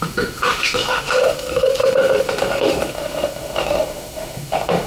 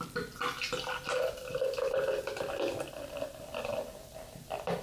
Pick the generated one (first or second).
first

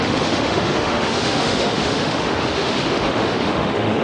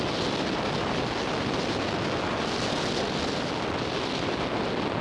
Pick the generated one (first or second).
first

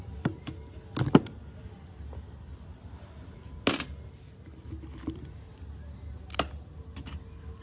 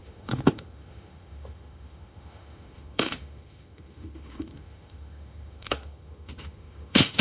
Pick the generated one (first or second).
second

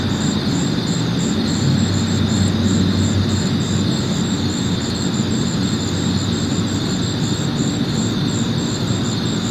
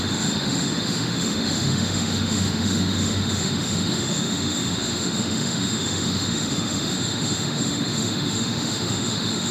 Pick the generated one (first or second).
second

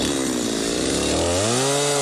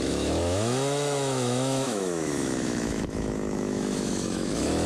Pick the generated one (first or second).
second